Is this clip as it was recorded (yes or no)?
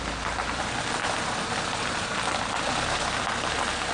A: yes